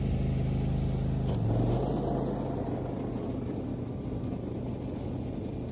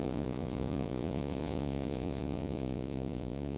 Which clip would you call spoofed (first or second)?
second